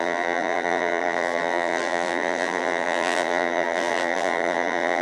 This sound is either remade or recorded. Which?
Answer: remade